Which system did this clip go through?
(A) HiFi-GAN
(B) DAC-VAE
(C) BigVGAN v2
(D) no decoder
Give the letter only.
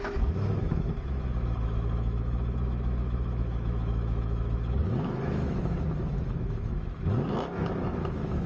B